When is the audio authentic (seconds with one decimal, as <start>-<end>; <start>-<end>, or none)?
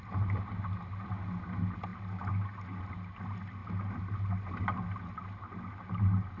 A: 0.0-6.4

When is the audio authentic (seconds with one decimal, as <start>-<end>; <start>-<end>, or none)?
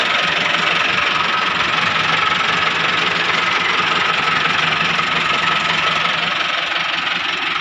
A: 0.0-7.6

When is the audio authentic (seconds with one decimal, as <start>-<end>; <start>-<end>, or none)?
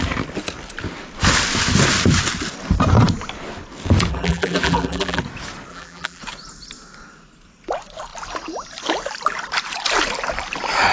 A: 0.0-4.1; 5.2-5.7; 6.2-10.9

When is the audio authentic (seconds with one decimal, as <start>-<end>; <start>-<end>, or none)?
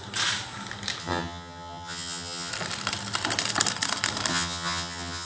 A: 0.0-1.0; 2.5-4.3